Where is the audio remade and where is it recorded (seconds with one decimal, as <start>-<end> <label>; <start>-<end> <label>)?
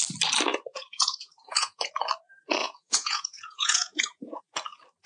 0.0-0.5 recorded; 0.5-1.9 remade; 1.9-2.6 recorded; 2.6-4.4 remade; 4.4-5.1 recorded